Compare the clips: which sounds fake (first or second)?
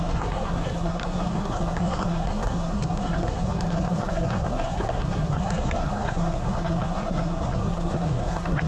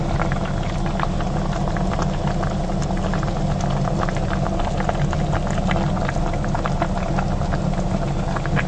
first